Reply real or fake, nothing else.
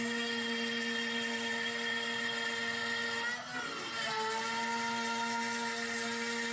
real